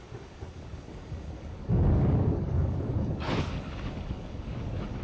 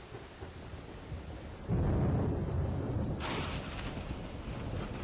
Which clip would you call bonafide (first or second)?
second